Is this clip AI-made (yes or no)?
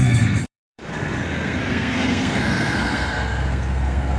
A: yes